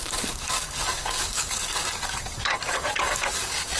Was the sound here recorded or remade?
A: remade